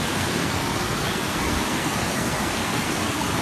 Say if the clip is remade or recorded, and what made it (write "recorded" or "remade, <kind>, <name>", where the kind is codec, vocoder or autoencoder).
remade, codec, SNAC